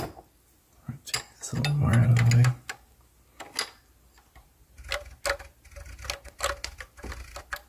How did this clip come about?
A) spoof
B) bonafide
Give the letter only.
B